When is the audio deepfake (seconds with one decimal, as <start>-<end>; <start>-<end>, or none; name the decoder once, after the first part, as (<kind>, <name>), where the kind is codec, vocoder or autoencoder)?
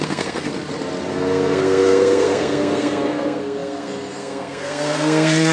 0.0-0.5 (codec, SNAC); 1.1-5.5